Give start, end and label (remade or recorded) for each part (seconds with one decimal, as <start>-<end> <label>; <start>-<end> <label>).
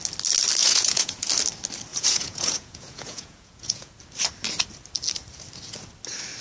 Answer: 0.0-0.6 recorded; 0.6-1.3 remade; 1.3-1.9 recorded; 1.9-3.9 remade; 3.9-6.4 recorded